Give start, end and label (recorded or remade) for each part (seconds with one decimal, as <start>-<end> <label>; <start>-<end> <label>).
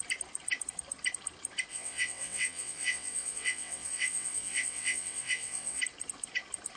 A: 0.0-1.7 recorded; 1.7-5.8 remade; 5.8-6.8 recorded